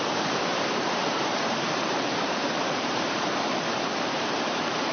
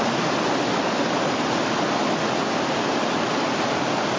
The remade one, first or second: first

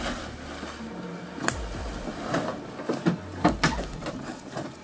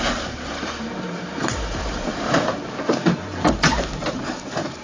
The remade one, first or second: second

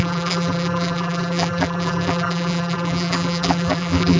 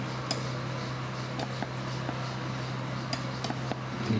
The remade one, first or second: first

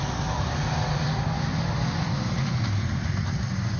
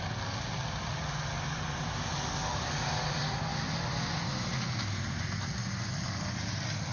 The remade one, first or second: first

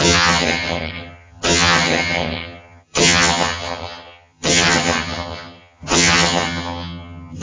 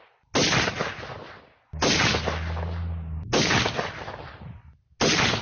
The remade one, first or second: first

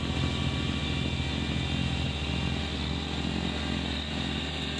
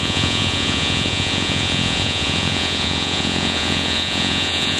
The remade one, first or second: second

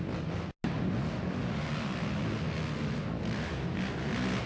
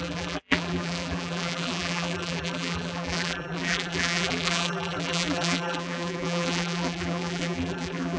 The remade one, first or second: second